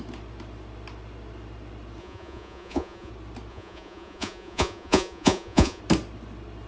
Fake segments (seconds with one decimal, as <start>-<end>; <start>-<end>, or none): 2.0-3.1; 3.5-5.8